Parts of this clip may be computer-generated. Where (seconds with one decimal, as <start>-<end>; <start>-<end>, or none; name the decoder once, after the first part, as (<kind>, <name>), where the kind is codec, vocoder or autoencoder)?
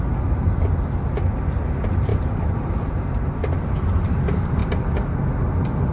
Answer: 2.1-3.2 (vocoder, BigVGAN v2)